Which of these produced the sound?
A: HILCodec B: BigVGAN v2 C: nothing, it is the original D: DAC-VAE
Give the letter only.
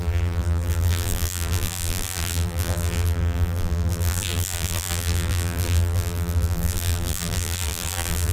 B